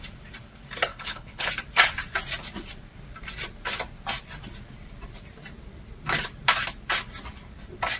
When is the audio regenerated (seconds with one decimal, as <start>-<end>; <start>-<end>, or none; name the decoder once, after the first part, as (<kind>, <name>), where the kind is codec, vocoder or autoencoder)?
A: 0.9-1.5 (codec, HILCodec)